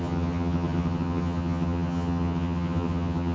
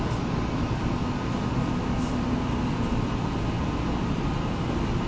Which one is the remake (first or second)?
first